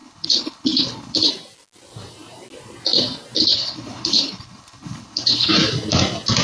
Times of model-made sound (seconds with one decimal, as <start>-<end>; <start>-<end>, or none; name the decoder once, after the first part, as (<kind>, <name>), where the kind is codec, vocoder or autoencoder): 0.0-1.3 (codec, HILCodec); 3.4-5.5

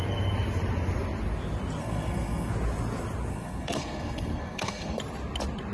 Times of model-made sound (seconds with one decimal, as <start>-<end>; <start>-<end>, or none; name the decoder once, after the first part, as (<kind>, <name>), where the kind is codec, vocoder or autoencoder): 1.8-2.5 (codec, SNAC); 3.3-5.0